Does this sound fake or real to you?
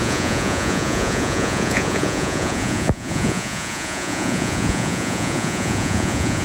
fake